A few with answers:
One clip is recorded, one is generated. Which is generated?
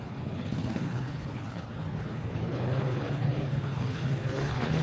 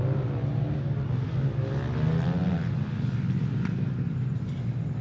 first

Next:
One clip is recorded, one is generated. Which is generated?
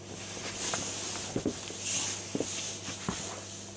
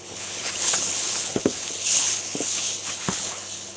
second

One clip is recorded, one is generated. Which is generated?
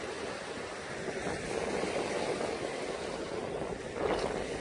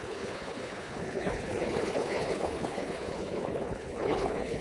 second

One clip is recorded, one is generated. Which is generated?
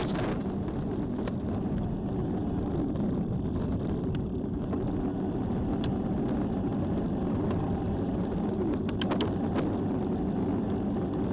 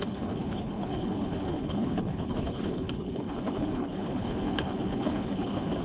second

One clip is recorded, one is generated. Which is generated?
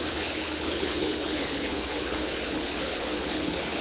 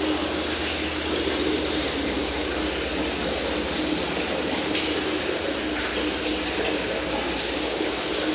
first